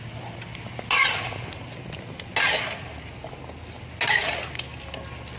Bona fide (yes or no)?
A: yes